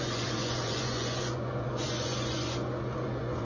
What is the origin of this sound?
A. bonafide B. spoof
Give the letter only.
B